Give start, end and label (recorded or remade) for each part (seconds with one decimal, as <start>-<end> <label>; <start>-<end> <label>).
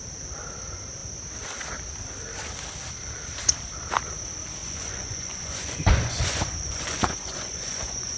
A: 0.0-4.6 recorded; 4.6-8.2 remade